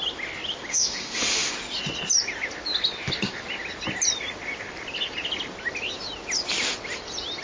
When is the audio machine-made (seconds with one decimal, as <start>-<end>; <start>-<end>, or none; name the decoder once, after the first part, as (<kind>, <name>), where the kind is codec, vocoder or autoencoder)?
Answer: 0.7-1.5 (autoencoder, DAC-VAE)